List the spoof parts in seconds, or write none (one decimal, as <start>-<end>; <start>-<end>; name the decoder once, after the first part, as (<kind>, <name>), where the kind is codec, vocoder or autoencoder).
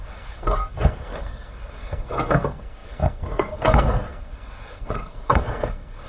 0.0-6.1 (codec, SNAC)